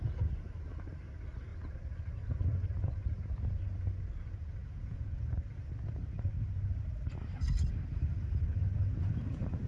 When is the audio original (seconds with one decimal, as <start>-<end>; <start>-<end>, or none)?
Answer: 0.0-4.6; 5.4-9.7